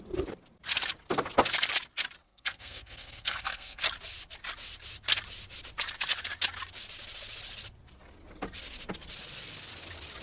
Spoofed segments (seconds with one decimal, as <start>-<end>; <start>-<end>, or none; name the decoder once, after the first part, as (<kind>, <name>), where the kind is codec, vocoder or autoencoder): 2.2-3.8 (codec, SNAC)